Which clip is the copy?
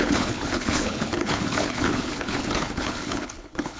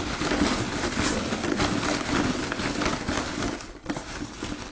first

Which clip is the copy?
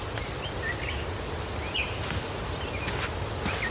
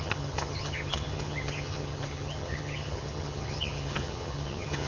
second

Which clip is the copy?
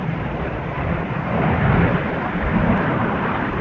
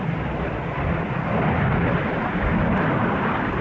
first